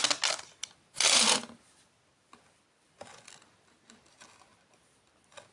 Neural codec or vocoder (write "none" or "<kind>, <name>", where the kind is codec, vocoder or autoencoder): none